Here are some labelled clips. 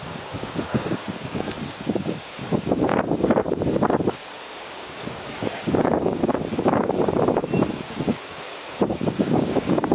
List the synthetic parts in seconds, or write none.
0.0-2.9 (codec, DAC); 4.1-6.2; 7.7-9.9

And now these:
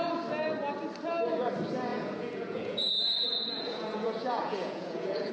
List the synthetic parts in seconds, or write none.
1.9-5.3 (vocoder, Vocos)

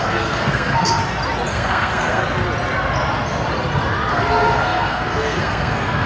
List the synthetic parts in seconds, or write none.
0.0-1.0 (codec, SNAC); 1.5-2.2; 4.1-6.1

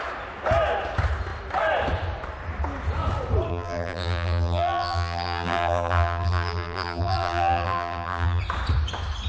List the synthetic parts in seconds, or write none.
3.5-8.4 (vocoder, BigVGAN v2)

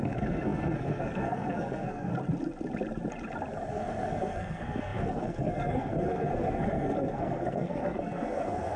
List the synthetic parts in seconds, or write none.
0.0-2.1 (codec, SNAC); 3.7-8.8

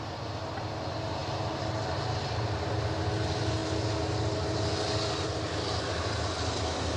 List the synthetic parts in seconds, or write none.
none

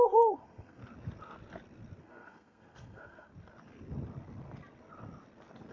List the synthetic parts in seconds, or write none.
0.0-0.8 (codec, SNAC); 2.0-3.3

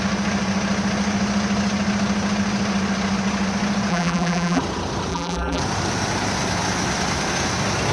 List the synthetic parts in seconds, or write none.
3.9-4.6 (vocoder, BigVGAN v2); 5.1-5.6